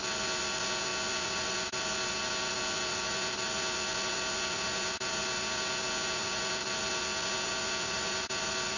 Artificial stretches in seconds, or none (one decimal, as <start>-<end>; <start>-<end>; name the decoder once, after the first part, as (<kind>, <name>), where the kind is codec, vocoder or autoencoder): none